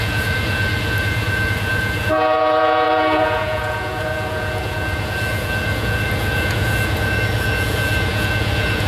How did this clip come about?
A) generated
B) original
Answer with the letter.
A